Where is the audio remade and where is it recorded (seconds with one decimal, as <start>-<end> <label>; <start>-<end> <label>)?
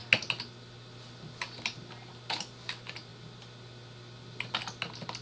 0.0-5.2 recorded